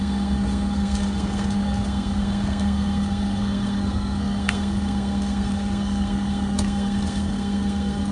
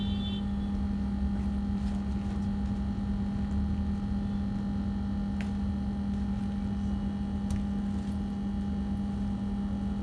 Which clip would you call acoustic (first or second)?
second